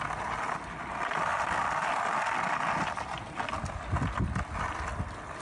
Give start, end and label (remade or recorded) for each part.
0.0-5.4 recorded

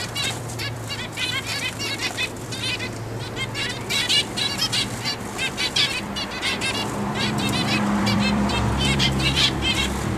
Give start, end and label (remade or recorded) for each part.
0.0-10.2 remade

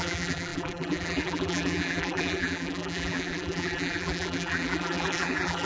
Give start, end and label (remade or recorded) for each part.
0.0-5.7 remade

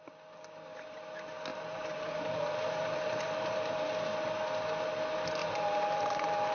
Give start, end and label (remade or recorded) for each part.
0.0-1.5 recorded; 1.5-3.8 remade; 3.8-5.4 recorded; 5.4-6.5 remade